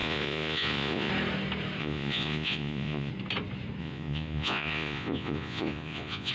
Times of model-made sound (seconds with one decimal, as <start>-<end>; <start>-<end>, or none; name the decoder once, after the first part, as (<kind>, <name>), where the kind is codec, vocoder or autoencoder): 0.0-1.1 (vocoder, Vocos); 1.8-3.1; 3.8-6.3